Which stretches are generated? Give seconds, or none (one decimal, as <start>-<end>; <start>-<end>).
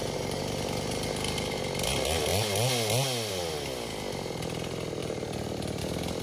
0.0-1.6; 5.0-5.8